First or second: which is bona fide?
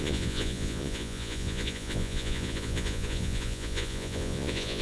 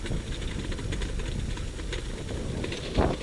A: second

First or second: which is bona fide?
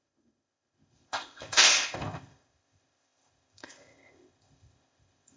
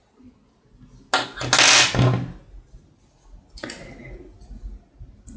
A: second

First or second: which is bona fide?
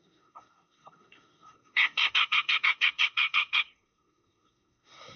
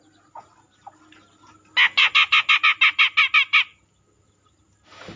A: second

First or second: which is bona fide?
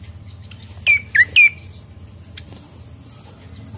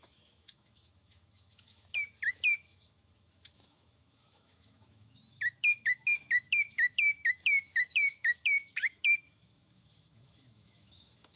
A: first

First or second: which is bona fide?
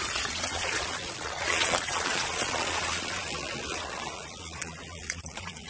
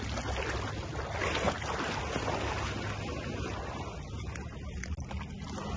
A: second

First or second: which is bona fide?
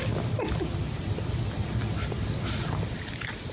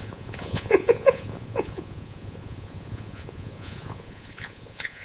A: first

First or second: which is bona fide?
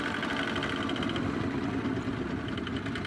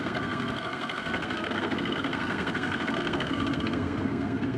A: first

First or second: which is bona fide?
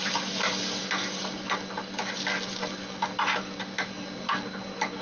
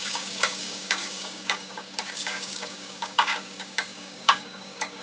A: first